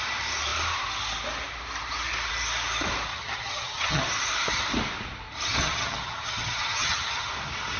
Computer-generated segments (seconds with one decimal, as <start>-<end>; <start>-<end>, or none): 3.1-4.0; 5.6-7.3